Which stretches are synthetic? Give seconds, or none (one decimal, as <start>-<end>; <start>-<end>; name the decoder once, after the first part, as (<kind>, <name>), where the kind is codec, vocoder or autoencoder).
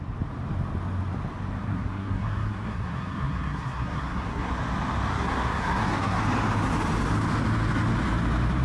1.6-4.5 (codec, SNAC); 5.1-6.2